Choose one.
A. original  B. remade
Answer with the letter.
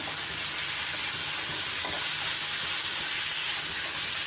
A